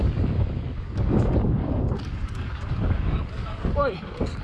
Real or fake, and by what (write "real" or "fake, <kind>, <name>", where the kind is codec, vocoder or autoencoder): fake, codec, DAC